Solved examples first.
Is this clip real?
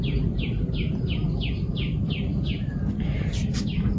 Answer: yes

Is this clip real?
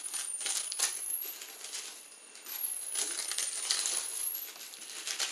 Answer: yes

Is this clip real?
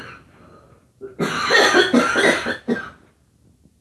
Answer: yes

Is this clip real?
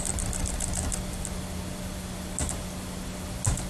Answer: yes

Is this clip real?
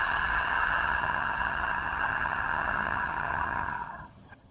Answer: no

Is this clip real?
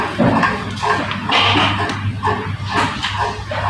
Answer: yes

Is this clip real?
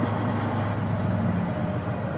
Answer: yes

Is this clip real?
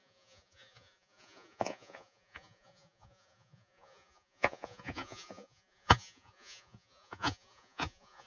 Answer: no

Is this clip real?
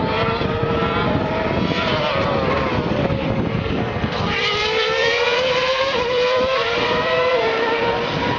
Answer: no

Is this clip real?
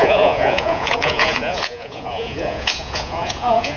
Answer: no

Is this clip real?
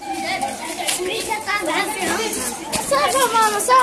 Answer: yes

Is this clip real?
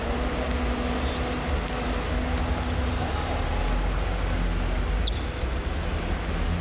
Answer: yes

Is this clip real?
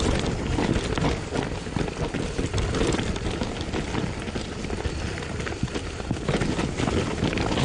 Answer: yes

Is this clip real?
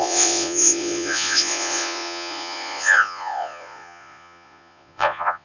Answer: no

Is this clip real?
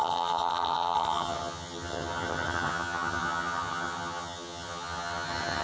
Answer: no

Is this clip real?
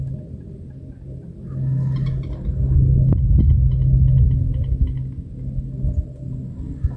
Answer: yes